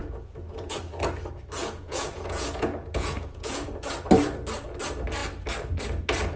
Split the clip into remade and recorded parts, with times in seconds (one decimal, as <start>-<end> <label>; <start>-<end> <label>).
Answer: 0.0-0.8 remade; 0.8-1.6 recorded; 1.6-3.9 remade; 3.9-6.4 recorded